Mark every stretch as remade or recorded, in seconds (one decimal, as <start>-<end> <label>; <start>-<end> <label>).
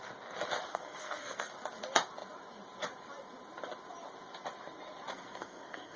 0.0-0.7 recorded; 0.7-1.5 remade; 1.5-5.1 recorded; 5.1-6.0 remade